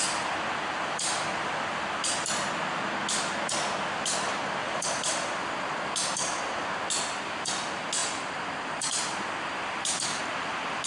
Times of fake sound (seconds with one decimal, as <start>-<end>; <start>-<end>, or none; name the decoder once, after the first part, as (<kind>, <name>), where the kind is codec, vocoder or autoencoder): 4.6-5.5 (vocoder, BigVGAN v2); 8.0-10.2